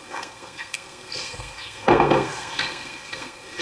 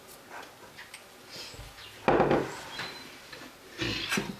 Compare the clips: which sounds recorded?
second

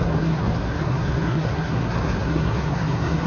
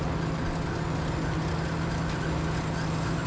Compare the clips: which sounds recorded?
second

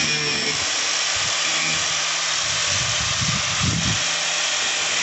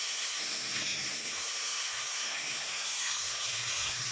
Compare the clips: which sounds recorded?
first